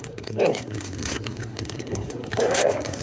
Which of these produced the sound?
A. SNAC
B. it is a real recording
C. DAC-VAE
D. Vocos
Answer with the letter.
A